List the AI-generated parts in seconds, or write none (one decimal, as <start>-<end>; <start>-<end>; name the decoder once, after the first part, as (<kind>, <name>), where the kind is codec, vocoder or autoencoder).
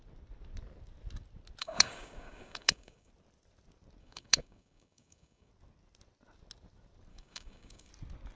1.6-3.1 (codec, DAC); 4.0-5.5; 7.1-7.9